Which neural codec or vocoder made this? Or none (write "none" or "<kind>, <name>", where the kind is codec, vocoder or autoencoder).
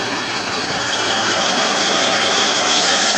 codec, SNAC